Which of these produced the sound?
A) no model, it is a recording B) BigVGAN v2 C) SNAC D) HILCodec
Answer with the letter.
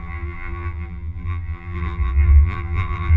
B